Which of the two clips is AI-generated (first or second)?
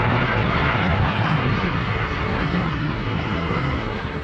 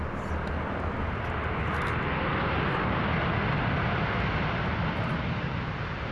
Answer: first